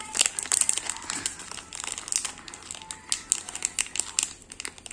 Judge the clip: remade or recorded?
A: recorded